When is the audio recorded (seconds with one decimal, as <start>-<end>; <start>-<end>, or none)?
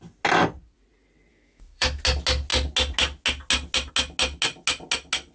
0.0-1.3; 2.0-5.3